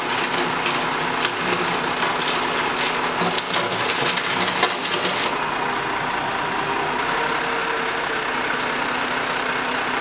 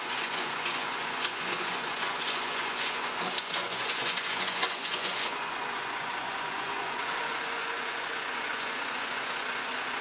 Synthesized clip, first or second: second